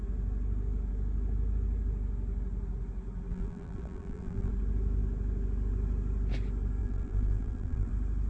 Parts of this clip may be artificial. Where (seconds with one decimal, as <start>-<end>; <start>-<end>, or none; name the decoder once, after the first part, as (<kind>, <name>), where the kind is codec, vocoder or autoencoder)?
3.3-4.5 (vocoder, BigVGAN v2); 6.8-7.9